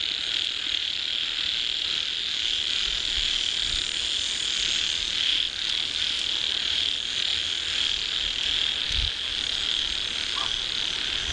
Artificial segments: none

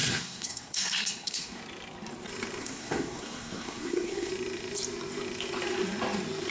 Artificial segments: 0.0-1.6 (codec, SNAC); 2.6-4.3

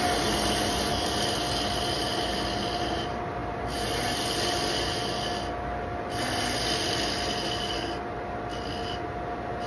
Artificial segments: none

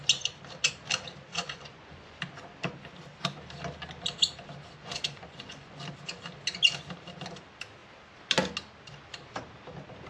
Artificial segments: 1.3-2.2 (vocoder, Vocos); 4.8-5.8

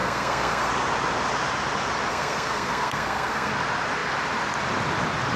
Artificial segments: 0.0-0.7 (codec, SNAC); 2.1-3.5

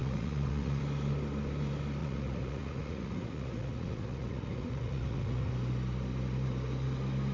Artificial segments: 0.0-0.8 (vocoder, Vocos); 2.0-5.5

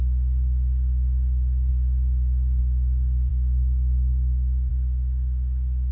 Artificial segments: 3.3-4.7 (codec, SNAC)